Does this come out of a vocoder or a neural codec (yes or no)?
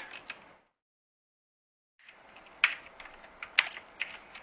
no